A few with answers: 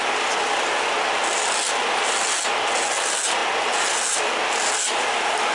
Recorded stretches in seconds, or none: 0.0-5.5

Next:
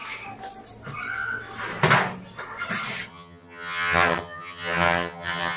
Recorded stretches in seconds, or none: 0.0-3.1

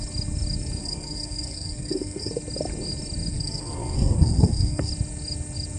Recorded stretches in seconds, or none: 0.0-0.8; 2.3-3.3; 4.9-5.8

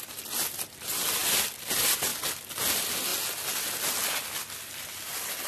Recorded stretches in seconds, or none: 0.0-5.5

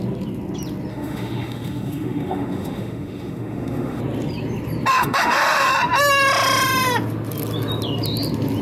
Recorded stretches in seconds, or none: 0.0-0.9; 4.0-4.9; 5.7-8.6

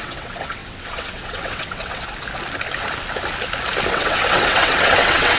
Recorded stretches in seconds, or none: 2.1-3.9

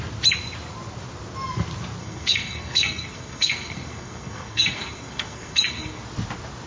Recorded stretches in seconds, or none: 0.0-2.0; 6.0-6.7